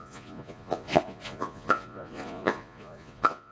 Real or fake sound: fake